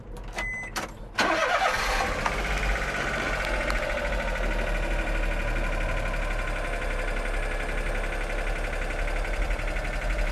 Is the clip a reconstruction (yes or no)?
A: no